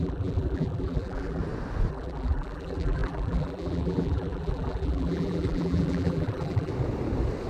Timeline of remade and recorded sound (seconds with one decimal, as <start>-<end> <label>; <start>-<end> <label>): 0.0-1.4 remade; 1.4-1.9 recorded; 1.9-6.7 remade; 6.7-7.5 recorded

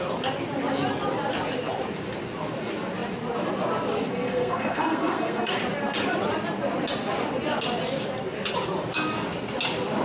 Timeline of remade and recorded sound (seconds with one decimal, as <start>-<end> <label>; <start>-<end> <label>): 0.0-4.1 recorded; 4.1-5.6 remade; 5.6-10.0 recorded

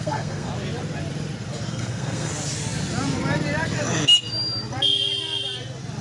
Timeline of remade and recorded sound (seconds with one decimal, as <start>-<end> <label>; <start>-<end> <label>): 0.0-0.5 remade; 0.5-1.7 recorded; 1.7-2.3 remade; 2.3-6.0 recorded

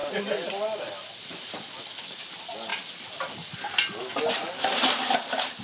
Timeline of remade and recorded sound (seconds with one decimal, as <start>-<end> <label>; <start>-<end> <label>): 0.0-5.6 recorded

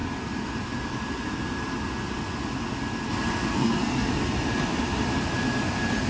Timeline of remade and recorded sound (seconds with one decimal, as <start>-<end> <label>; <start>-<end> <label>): 0.0-3.5 recorded; 3.5-4.1 remade; 4.1-6.1 recorded

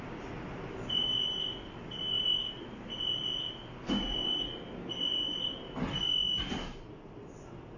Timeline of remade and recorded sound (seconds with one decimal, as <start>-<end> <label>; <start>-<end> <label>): 0.0-7.8 recorded

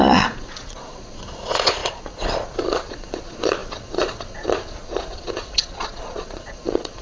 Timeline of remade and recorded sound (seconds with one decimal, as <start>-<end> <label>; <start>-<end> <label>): 0.0-7.0 remade

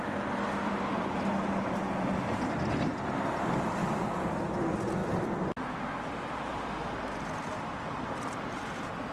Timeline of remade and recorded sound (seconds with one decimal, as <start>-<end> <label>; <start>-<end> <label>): 0.0-9.1 recorded